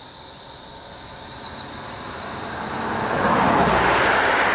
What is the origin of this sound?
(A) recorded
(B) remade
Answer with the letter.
A